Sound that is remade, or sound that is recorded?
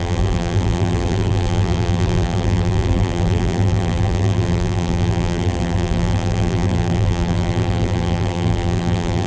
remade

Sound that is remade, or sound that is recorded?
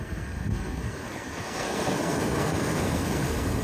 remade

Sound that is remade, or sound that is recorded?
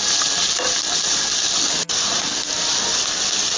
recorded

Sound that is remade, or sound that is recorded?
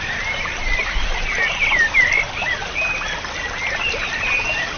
recorded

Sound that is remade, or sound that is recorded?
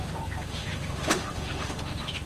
remade